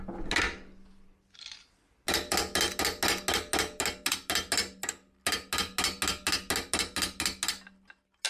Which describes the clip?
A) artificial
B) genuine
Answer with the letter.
B